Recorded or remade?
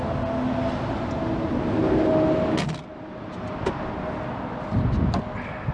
recorded